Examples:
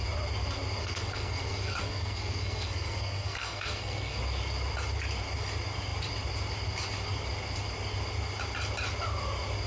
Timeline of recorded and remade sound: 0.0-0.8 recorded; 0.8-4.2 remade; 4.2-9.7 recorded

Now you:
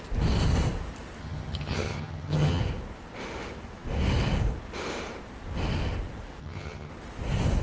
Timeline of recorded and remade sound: 0.0-1.2 recorded; 1.2-2.6 remade; 2.6-6.4 recorded; 6.4-6.9 remade; 6.9-7.6 recorded

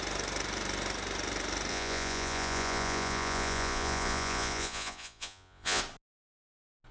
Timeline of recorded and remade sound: 0.0-1.7 recorded; 1.7-5.8 remade; 5.8-6.9 recorded

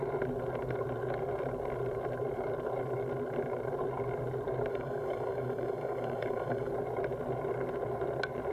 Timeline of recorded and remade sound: 0.0-4.7 recorded; 4.7-6.7 remade; 6.7-8.5 recorded